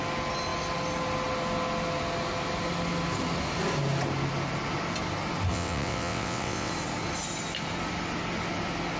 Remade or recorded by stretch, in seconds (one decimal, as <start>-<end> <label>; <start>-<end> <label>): 0.0-5.5 recorded; 5.5-6.7 remade; 6.7-9.0 recorded